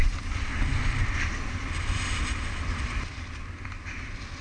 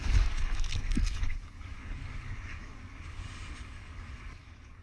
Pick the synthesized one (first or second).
second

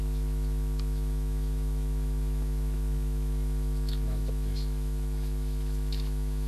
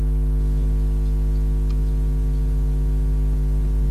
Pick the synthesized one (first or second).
first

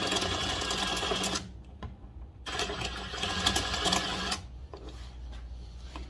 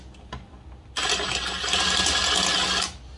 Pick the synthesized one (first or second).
first